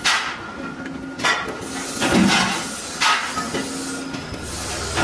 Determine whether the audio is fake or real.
real